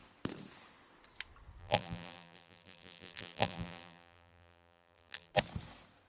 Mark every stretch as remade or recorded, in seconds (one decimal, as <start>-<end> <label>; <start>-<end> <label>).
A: 0.0-1.6 recorded; 1.6-5.3 remade; 5.3-6.1 recorded